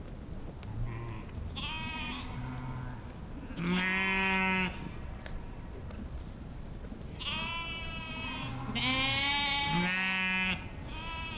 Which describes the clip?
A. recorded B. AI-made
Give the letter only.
A